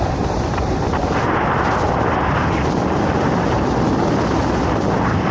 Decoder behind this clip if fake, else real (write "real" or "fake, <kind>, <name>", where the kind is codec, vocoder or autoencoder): real